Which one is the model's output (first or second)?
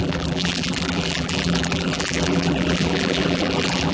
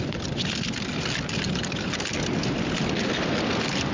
first